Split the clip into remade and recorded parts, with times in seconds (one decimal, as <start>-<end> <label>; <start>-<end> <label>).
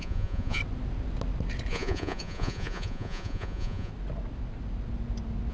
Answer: 0.0-0.6 remade; 0.6-1.7 recorded; 1.7-3.9 remade; 3.9-5.5 recorded